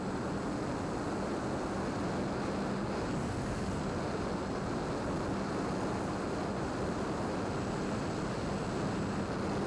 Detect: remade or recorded recorded